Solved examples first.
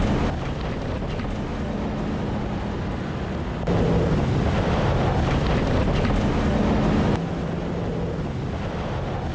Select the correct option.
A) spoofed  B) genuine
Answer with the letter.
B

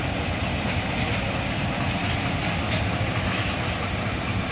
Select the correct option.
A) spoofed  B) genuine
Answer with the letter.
B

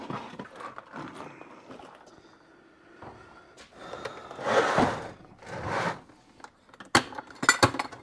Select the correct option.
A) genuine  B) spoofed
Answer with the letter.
A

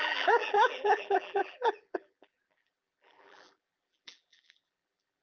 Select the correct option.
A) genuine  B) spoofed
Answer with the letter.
B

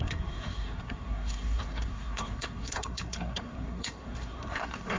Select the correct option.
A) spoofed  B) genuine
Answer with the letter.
A